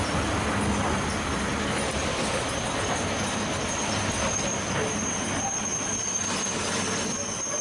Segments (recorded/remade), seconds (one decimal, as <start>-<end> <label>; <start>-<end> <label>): 0.0-7.6 recorded